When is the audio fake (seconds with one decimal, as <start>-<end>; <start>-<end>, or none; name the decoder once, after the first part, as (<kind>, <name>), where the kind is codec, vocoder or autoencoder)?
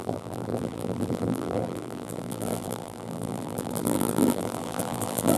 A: 0.0-5.4 (vocoder, BigVGAN v2)